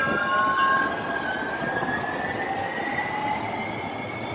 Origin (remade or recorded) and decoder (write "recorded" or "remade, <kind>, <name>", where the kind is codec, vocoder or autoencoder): recorded